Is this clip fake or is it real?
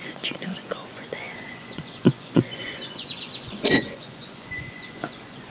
fake